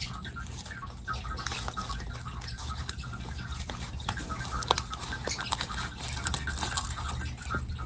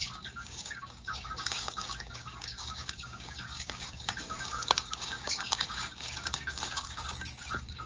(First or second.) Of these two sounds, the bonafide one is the first